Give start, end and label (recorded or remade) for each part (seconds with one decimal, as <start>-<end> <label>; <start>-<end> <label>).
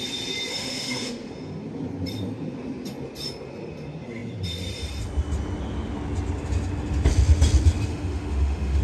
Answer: 0.0-0.5 recorded; 0.5-1.3 remade; 1.3-7.9 recorded; 7.9-8.8 remade